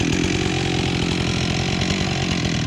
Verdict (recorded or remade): recorded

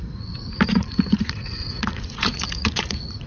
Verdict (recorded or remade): remade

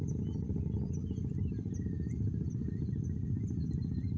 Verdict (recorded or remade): recorded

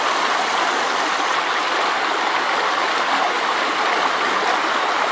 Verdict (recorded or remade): recorded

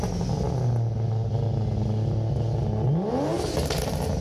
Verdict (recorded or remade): recorded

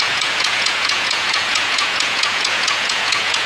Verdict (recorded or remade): remade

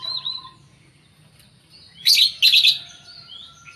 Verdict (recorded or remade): recorded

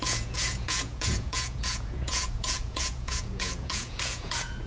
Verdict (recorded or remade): remade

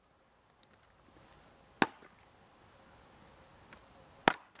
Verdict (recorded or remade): recorded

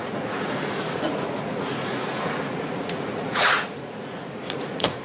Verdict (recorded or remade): remade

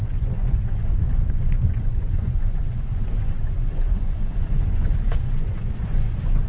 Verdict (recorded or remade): remade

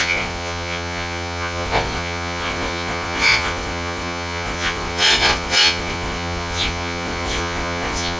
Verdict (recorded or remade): remade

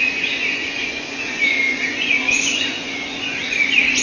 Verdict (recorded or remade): remade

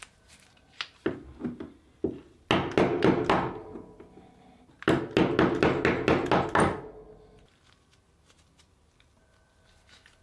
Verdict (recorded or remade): recorded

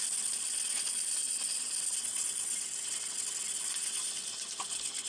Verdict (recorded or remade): recorded